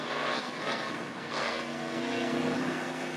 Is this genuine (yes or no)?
no